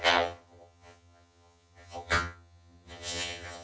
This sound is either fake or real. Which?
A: fake